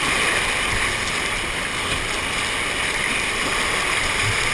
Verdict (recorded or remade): recorded